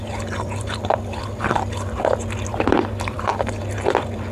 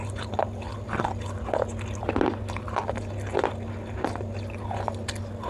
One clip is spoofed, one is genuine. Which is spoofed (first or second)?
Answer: first